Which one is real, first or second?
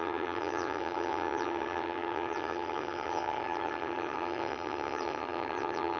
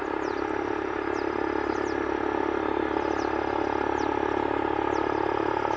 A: second